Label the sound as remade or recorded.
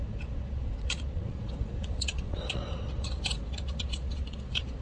remade